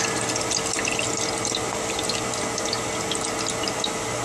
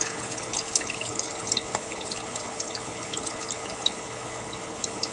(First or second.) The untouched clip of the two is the first